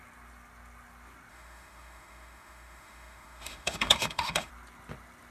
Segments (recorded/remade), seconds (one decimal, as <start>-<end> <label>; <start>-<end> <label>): 0.0-1.3 recorded; 1.3-4.5 remade; 4.5-5.3 recorded